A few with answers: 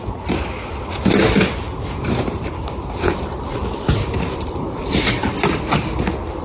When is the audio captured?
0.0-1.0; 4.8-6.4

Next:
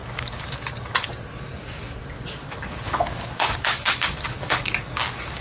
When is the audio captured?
1.1-2.4

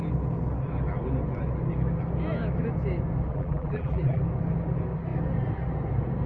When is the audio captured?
0.0-3.3; 4.2-6.3

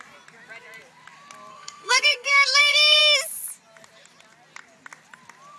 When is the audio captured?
0.0-1.5; 3.0-5.6

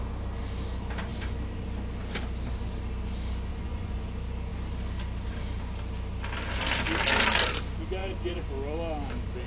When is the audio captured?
0.0-3.5; 4.0-8.0; 8.5-9.5

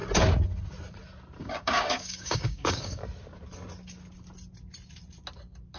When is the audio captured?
0.0-1.4; 3.0-5.8